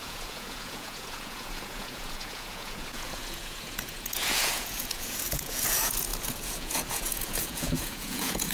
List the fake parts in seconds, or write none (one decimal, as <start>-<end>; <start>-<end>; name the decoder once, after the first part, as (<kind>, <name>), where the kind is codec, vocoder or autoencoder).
0.0-8.5 (vocoder, Vocos)